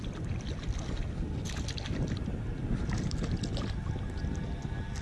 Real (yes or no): yes